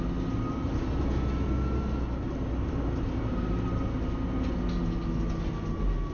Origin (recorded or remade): recorded